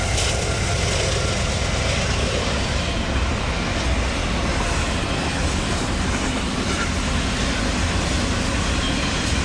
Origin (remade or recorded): recorded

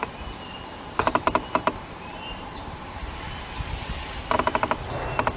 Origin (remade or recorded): remade